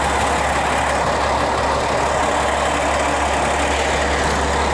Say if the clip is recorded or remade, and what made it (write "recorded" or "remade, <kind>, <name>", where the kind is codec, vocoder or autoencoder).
recorded